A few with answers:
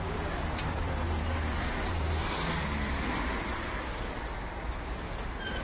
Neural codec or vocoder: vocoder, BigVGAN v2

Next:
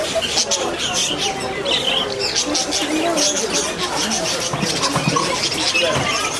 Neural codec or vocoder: none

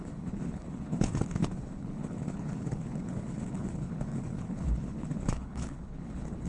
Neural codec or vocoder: codec, HILCodec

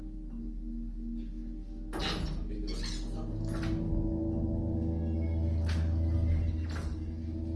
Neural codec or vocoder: none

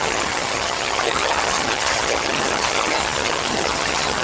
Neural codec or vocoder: vocoder, HiFi-GAN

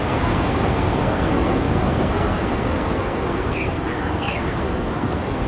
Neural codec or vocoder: codec, SNAC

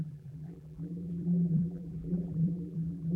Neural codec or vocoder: vocoder, BigVGAN v2